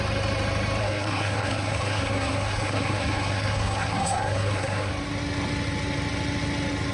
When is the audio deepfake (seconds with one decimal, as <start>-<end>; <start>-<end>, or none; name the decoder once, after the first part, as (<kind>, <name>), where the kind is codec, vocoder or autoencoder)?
0.8-4.9 (codec, SNAC)